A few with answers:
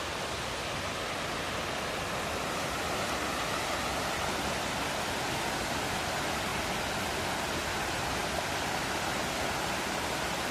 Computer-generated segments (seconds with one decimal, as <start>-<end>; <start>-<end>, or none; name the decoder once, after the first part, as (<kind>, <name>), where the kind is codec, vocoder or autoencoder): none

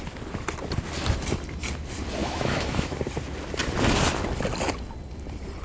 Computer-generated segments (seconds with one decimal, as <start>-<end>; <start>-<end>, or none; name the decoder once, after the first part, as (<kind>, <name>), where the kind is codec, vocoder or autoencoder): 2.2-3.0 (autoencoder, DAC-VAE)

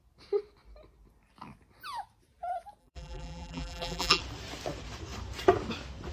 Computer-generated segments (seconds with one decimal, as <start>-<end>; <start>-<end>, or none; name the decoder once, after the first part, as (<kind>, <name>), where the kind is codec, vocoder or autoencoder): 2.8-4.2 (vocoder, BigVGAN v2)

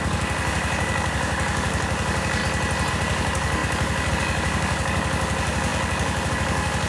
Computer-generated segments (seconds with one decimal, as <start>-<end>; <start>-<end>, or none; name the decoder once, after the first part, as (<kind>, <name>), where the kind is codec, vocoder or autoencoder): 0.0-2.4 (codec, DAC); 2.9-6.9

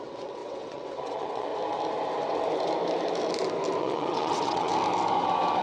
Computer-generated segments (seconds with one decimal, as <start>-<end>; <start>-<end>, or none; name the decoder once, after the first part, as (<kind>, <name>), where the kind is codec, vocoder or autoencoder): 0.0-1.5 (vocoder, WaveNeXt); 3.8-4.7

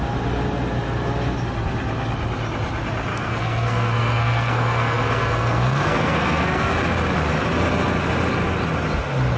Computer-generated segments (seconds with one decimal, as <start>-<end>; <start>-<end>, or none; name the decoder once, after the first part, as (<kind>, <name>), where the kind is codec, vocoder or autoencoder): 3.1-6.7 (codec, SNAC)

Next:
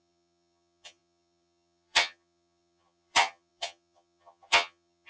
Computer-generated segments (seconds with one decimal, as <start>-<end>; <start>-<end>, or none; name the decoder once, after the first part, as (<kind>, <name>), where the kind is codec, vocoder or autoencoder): 0.0-5.1 (vocoder, HiFi-GAN)